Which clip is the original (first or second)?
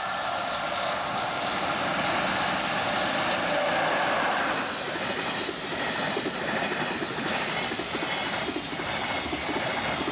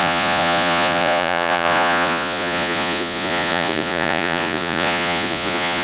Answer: first